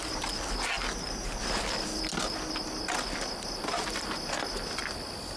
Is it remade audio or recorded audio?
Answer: recorded